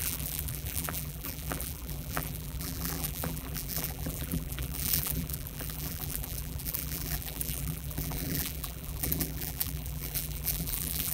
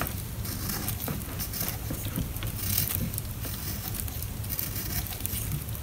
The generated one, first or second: first